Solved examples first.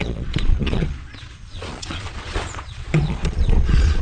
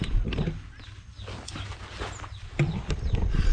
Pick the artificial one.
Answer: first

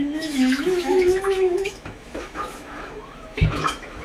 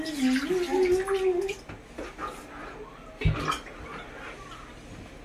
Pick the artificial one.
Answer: first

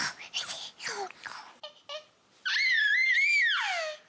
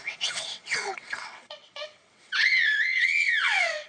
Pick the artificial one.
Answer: second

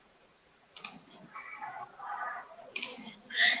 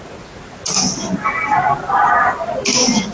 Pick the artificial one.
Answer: first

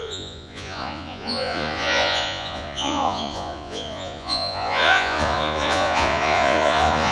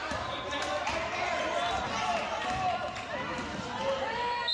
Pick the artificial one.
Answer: first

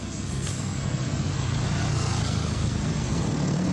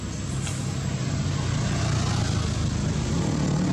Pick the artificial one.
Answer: first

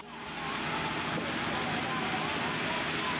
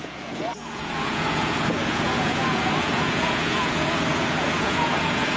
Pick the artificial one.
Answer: second